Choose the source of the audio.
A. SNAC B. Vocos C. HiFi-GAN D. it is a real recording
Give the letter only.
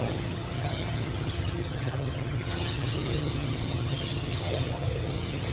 C